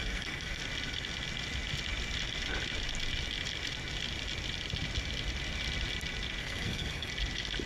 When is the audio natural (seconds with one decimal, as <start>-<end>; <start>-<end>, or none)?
0.6-6.4; 7.1-7.7